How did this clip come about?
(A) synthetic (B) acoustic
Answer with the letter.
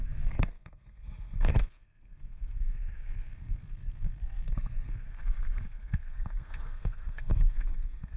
A